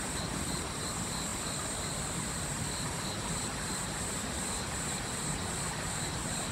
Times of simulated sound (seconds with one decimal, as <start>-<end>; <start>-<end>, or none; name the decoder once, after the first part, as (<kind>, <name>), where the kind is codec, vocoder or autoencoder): 0.0-1.3 (vocoder, BigVGAN v2); 2.6-6.5